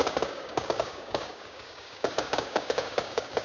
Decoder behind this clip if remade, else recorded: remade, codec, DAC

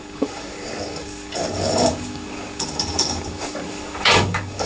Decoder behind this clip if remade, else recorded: remade, codec, DAC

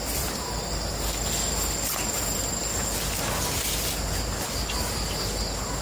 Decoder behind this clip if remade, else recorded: recorded